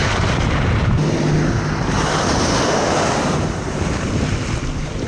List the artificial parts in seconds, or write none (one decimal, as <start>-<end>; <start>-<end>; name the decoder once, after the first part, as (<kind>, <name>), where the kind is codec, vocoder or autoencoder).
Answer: none